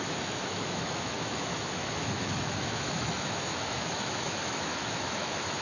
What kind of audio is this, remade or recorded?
remade